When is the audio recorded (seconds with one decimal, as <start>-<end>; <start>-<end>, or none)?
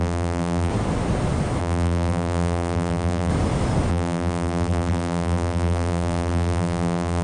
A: 0.7-1.6; 3.3-3.9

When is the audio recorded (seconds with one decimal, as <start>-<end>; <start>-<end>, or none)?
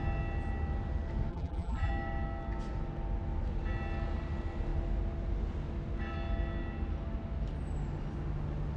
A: 0.0-1.3; 1.9-8.8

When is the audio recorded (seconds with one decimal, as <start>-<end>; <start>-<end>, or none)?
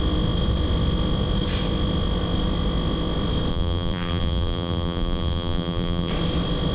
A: 0.0-3.5; 6.1-6.7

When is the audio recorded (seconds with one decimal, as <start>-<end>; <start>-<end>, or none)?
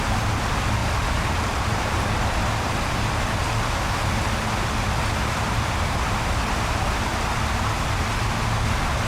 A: 0.0-0.8; 1.9-2.4; 3.4-9.1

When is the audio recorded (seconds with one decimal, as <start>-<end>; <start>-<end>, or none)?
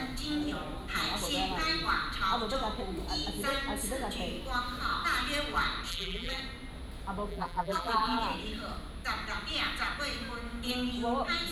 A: 0.0-5.9; 6.4-7.3; 8.2-11.5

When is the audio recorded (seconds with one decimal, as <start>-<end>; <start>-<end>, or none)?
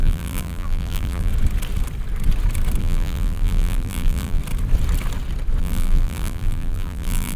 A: 1.3-2.8; 4.4-5.6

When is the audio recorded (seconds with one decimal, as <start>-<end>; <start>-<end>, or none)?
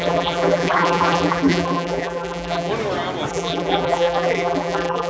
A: 2.7-3.3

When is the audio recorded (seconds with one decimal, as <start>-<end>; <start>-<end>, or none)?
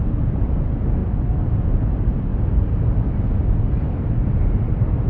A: 1.0-1.5; 2.3-3.9